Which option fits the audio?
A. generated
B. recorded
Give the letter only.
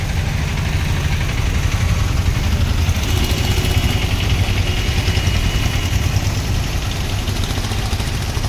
B